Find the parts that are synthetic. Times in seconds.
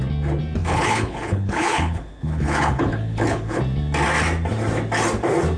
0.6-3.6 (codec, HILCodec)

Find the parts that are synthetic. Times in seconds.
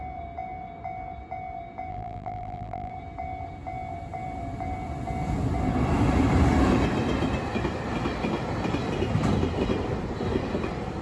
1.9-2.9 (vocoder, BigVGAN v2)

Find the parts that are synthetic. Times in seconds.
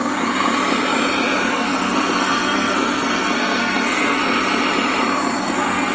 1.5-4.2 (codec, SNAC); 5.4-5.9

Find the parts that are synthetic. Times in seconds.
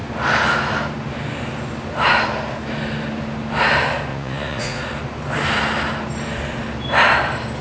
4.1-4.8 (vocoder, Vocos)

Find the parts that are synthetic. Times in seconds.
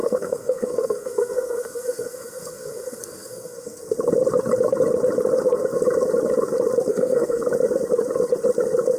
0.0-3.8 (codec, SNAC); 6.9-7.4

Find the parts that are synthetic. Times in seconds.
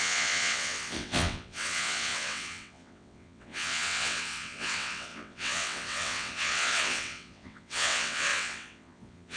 0.0-9.4 (vocoder, WaveNeXt)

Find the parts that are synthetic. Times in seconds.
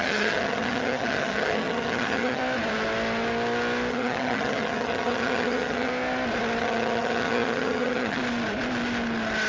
0.0-2.4 (vocoder, HiFi-GAN); 3.9-5.9; 6.6-8.2